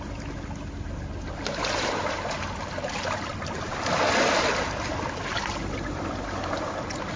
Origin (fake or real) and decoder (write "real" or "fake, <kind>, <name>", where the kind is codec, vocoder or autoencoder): real